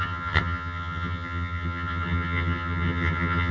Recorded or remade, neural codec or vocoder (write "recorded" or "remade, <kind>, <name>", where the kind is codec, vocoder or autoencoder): remade, vocoder, HiFi-GAN